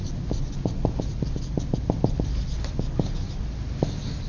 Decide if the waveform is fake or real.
real